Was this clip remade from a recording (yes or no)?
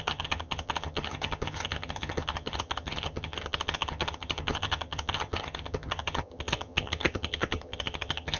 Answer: yes